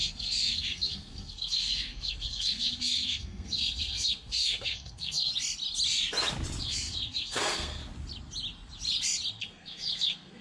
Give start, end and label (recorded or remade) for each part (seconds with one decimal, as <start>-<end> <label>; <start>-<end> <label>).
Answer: 0.0-5.3 remade; 5.3-6.6 recorded; 6.6-7.8 remade; 7.8-9.3 recorded; 9.3-10.4 remade